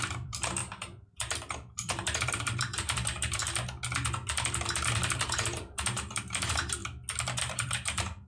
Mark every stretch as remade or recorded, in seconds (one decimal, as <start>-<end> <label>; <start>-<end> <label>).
0.0-3.4 remade; 3.4-4.7 recorded; 4.7-6.8 remade; 6.8-7.4 recorded; 7.4-8.3 remade